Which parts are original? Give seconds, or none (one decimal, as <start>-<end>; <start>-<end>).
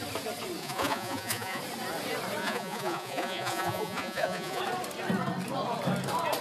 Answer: 0.0-0.6; 1.6-2.4; 4.6-6.4